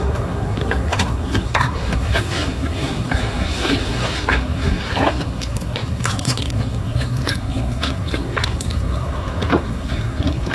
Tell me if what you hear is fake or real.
fake